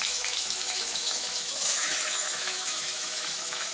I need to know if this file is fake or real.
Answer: fake